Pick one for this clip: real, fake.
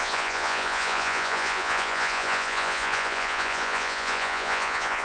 fake